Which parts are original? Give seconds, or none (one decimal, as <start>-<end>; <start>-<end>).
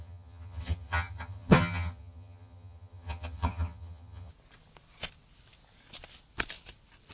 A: 4.3-7.1